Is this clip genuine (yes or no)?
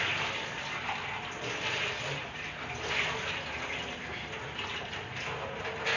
yes